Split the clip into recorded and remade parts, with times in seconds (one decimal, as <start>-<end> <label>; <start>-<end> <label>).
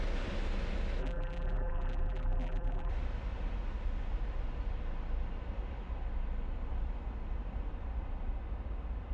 0.0-1.0 recorded; 1.0-2.9 remade; 2.9-9.1 recorded